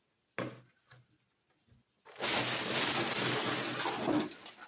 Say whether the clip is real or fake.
real